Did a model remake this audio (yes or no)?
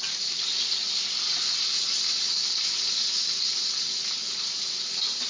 no